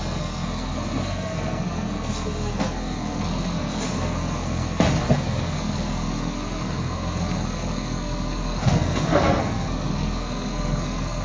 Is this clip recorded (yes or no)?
no